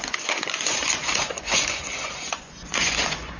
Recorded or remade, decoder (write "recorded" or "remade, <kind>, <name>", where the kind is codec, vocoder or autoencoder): remade, vocoder, Vocos